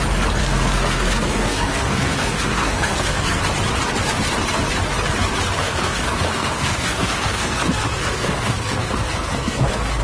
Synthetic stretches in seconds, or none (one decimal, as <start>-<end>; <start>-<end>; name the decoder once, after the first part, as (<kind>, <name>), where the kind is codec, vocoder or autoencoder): 0.4-3.4 (codec, SNAC); 5.6-10.0